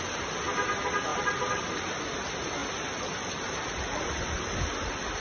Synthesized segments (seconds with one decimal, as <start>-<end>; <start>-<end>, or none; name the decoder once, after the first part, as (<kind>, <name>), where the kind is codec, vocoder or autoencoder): 1.1-2.0 (vocoder, BigVGAN v2); 3.9-4.8